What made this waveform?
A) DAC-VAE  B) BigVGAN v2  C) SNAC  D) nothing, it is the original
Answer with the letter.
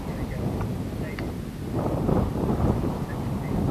D